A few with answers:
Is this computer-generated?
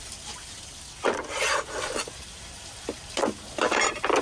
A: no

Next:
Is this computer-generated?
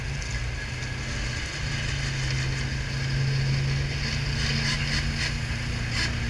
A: no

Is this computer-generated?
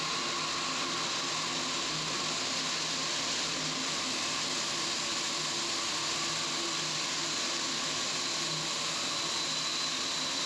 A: no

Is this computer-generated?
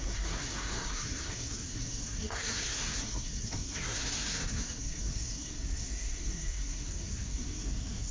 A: yes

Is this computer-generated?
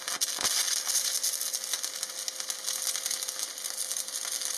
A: no